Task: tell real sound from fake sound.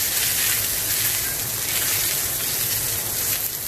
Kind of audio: real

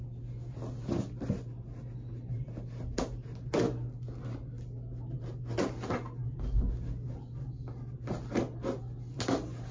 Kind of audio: real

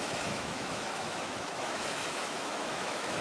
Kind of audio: fake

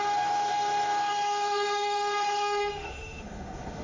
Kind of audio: fake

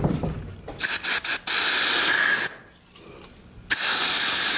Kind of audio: real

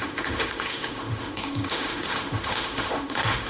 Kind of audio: fake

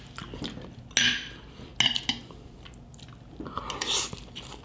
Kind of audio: real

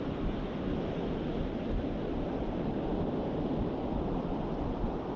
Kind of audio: real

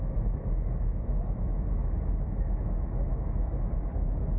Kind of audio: fake